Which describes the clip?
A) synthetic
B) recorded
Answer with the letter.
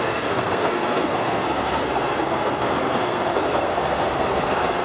A